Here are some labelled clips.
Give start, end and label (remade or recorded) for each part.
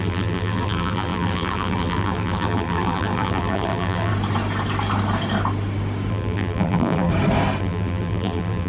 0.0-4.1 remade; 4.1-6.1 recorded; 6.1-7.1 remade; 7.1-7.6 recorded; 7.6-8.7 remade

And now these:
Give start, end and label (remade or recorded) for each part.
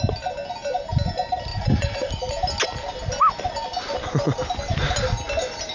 0.0-1.5 recorded; 1.5-2.1 remade; 2.1-5.7 recorded